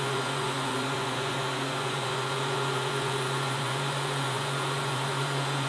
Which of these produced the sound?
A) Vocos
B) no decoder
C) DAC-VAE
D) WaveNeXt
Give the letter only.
A